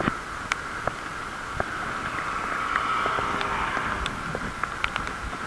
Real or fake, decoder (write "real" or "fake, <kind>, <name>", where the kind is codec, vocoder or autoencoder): real